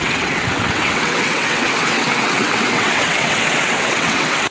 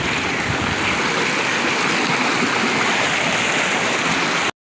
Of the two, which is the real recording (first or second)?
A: second